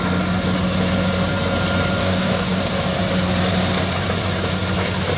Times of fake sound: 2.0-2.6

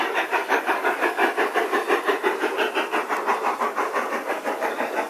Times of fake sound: 0.0-1.2; 3.6-5.1

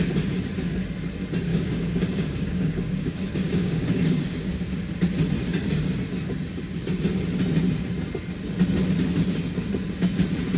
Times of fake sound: 1.5-4.5

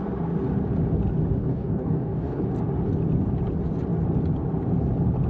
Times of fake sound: 1.4-2.4

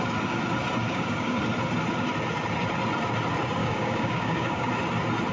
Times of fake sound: 0.8-1.4; 3.6-4.7

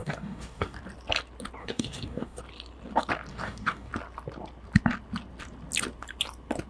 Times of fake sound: 0.0-0.8; 1.6-2.4; 3.3-3.9

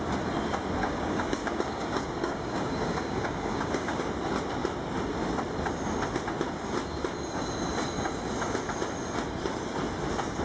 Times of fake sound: 0.8-4.0